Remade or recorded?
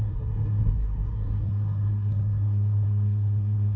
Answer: remade